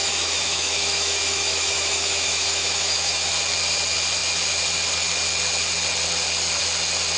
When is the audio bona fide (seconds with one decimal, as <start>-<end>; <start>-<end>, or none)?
3.3-7.2